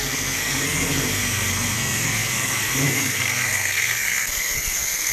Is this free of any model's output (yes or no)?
no